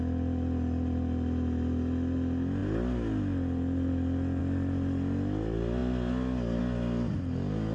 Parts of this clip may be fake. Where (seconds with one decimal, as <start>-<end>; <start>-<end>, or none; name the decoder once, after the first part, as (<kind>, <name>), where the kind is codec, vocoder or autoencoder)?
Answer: none